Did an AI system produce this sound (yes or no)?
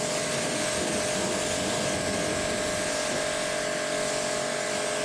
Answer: no